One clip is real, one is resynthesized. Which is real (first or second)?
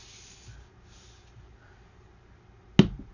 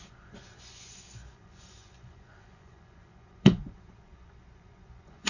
first